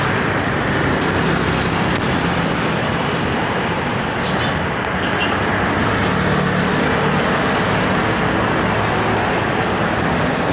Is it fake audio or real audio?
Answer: real